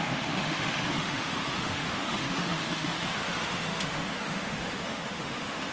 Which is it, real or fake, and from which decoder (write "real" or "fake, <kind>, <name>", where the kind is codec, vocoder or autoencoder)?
fake, autoencoder, DAC-VAE